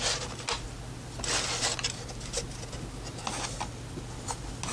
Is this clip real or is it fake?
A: real